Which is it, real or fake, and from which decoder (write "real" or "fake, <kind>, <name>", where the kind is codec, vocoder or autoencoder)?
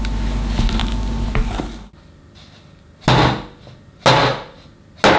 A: real